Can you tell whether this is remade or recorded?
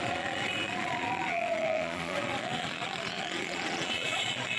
remade